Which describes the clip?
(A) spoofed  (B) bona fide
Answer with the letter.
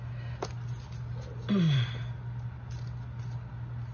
B